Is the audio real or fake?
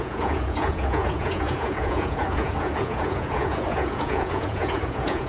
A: fake